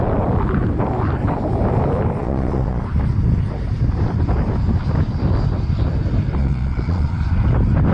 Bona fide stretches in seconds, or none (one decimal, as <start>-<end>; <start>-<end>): 0.0-2.2; 2.8-6.4; 7.1-7.9